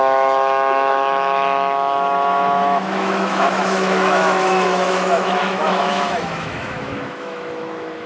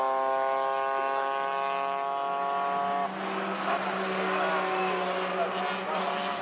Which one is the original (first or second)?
second